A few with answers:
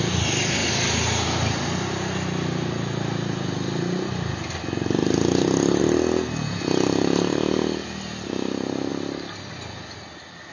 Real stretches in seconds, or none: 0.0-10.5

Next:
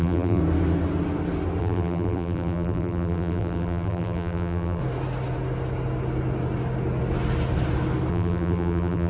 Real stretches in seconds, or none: 0.4-1.6; 4.8-8.1

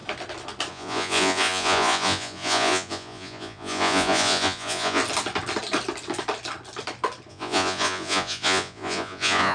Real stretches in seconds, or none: 0.0-0.7; 5.0-7.3

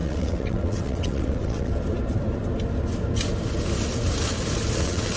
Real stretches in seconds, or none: 1.7-4.8